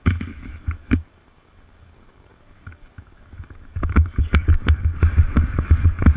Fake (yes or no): yes